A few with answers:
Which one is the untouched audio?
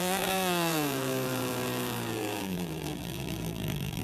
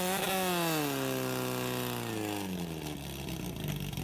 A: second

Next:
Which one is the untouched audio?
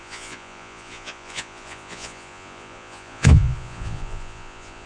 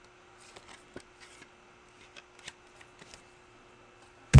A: second